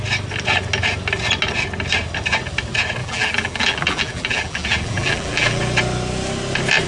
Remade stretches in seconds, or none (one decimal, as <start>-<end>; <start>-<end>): 3.0-5.6